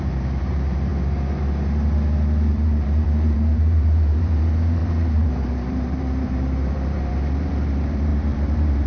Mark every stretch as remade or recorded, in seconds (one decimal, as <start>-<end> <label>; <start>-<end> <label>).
0.0-0.9 remade; 0.9-2.5 recorded; 2.5-8.9 remade